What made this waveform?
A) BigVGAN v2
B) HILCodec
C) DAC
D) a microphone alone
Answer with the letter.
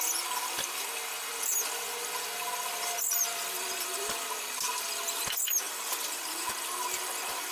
D